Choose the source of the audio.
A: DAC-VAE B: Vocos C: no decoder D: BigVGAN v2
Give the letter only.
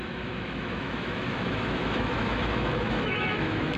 A